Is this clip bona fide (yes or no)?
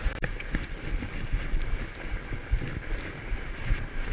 yes